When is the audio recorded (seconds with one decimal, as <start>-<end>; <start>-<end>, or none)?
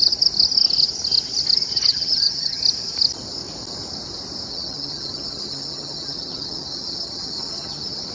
0.0-1.9; 2.6-4.5